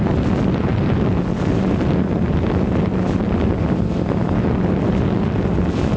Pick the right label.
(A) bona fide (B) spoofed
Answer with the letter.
A